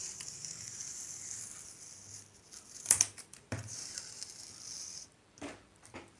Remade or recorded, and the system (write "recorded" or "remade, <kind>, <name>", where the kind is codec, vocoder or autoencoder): remade, vocoder, BigVGAN v2